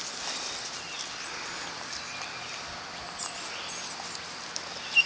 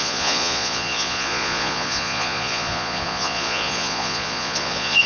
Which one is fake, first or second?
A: second